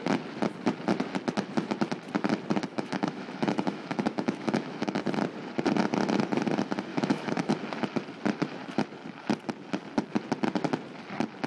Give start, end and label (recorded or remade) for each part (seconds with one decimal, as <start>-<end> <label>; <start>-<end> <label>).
0.0-2.7 recorded; 2.7-5.0 remade; 5.0-6.9 recorded; 6.9-7.5 remade; 7.5-11.5 recorded